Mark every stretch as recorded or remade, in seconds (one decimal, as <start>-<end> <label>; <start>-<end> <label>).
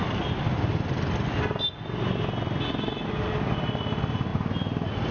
0.0-5.1 recorded